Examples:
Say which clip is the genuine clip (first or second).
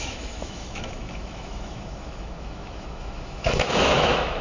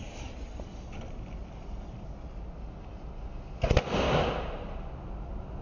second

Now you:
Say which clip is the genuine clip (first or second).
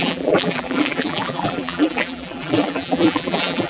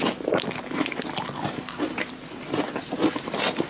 second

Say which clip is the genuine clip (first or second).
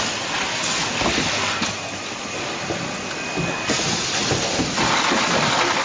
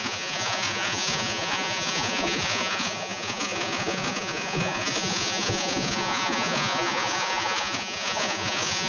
first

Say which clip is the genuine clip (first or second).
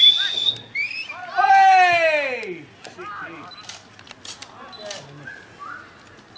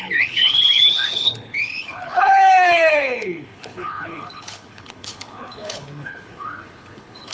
first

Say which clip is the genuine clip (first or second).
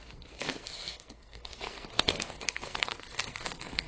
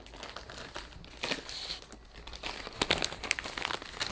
second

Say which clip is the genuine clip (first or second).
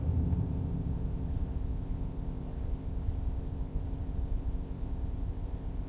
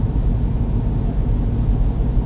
second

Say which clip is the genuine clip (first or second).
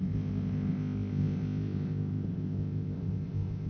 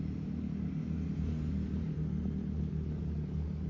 second